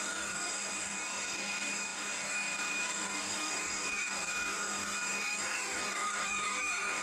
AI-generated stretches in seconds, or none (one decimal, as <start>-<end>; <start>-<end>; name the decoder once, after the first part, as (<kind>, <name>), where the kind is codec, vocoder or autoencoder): 0.0-7.0 (codec, DAC)